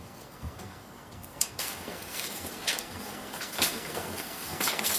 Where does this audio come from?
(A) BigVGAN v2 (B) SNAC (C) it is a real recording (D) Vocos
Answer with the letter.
B